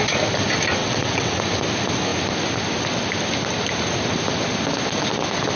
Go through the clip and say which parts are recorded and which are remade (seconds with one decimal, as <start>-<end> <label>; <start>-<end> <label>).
0.0-0.8 recorded; 0.8-1.4 remade; 1.4-5.6 recorded

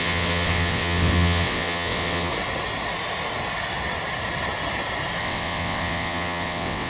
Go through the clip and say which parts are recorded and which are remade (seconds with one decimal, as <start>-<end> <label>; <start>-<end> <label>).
0.0-2.3 remade; 2.3-5.2 recorded; 5.2-6.9 remade

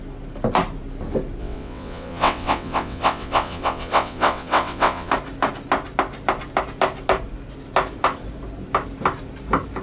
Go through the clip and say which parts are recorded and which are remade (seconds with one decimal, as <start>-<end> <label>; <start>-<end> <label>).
0.0-1.4 recorded; 1.4-5.1 remade; 5.1-9.8 recorded

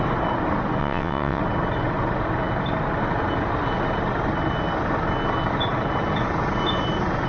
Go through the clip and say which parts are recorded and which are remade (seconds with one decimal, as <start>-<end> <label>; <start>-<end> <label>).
0.0-0.8 recorded; 0.8-1.4 remade; 1.4-7.3 recorded